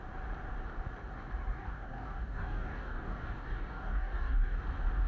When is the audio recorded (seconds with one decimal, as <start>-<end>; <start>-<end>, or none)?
0.0-1.5; 4.6-5.1